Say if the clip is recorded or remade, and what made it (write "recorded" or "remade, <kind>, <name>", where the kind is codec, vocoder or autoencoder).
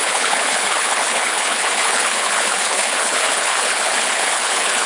remade, codec, HILCodec